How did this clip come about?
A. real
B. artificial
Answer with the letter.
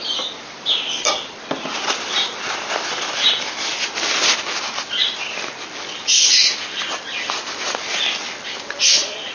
A